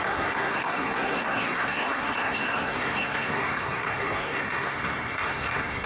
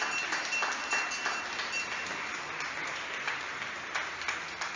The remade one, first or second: first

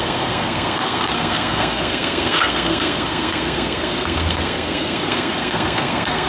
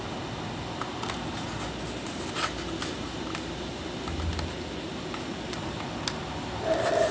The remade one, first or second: first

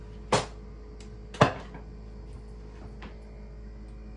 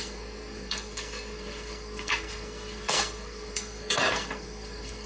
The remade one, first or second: second